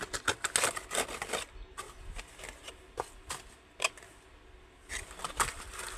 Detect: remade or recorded recorded